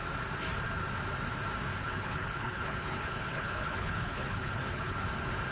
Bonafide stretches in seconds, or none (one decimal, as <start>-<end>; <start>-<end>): 0.0-1.8; 5.0-5.5